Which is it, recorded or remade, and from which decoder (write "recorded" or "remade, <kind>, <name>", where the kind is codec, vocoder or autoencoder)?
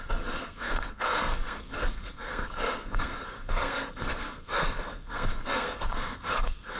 remade, codec, SNAC